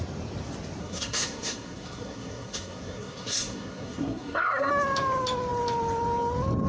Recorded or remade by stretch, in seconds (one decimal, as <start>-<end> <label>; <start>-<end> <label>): 0.0-0.8 recorded; 0.8-4.7 remade; 4.7-6.7 recorded